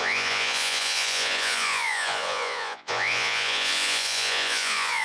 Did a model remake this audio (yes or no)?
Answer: yes